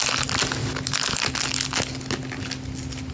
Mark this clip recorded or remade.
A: recorded